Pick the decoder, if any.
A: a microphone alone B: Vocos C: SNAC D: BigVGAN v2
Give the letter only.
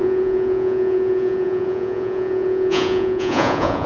B